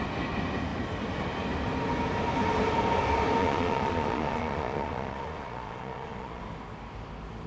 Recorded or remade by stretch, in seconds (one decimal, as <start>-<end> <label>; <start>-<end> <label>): 0.0-3.4 recorded; 3.4-6.4 remade; 6.4-7.5 recorded